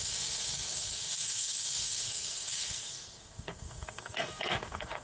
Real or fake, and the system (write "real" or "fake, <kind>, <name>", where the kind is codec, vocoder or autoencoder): fake, codec, SNAC